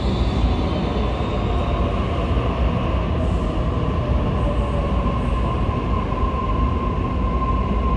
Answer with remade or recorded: recorded